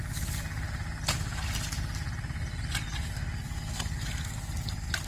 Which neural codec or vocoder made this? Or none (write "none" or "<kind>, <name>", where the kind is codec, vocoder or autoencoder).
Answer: none